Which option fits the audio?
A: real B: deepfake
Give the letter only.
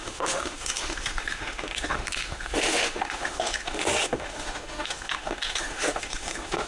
B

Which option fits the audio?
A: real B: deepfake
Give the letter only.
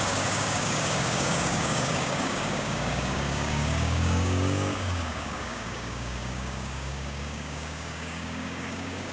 B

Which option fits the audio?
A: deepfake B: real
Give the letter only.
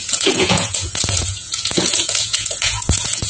A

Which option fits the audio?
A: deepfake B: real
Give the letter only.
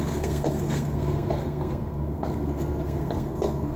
A